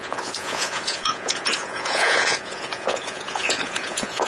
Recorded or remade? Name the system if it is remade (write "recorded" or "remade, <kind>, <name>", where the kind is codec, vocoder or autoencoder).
remade, vocoder, Vocos